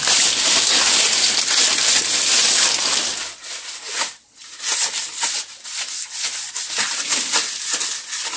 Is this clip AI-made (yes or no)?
no